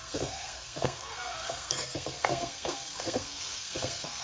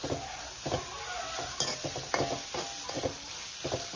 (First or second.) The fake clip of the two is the first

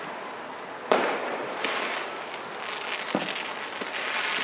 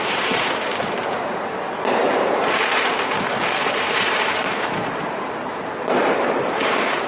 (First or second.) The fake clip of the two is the second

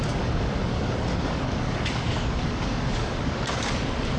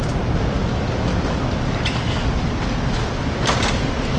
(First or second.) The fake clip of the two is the first